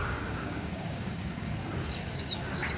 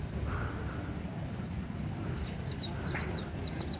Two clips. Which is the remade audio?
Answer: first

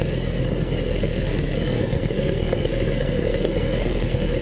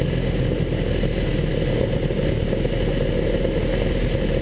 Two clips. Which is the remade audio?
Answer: first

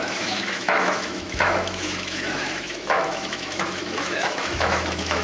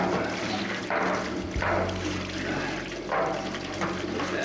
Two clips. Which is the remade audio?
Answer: first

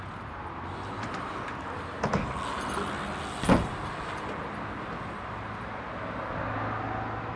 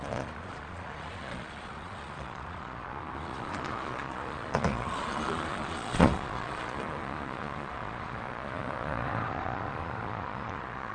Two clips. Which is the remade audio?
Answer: second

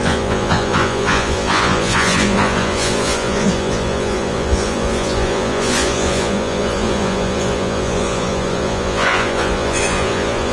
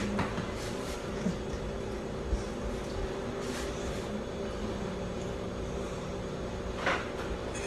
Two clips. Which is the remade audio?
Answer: first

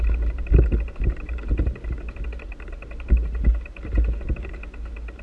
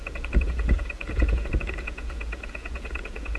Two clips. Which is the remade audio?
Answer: second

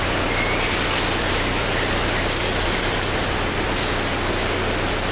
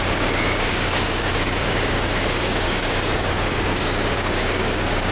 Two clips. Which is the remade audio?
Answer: second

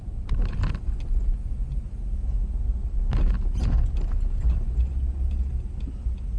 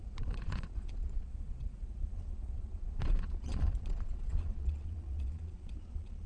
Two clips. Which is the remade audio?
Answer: second